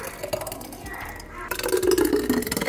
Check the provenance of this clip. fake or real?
real